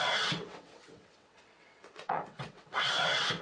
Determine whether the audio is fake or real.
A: fake